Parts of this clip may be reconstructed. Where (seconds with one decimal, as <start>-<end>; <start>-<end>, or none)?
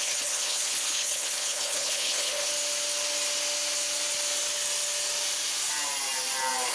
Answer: 0.0-2.5